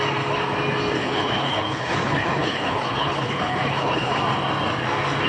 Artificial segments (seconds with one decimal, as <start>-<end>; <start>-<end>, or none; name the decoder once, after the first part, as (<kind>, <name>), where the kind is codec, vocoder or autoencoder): 1.0-4.2 (codec, HILCodec)